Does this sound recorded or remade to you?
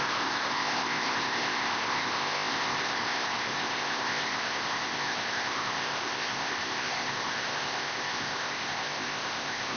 remade